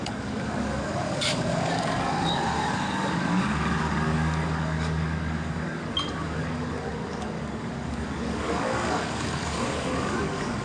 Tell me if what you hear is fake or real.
fake